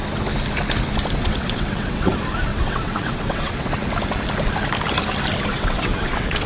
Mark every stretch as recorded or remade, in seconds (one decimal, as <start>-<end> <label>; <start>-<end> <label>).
0.0-1.2 recorded; 1.2-2.1 remade; 2.1-2.5 recorded; 2.5-3.7 remade; 3.7-5.5 recorded; 5.5-6.5 remade